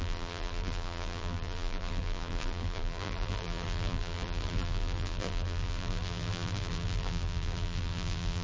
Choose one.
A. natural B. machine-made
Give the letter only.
B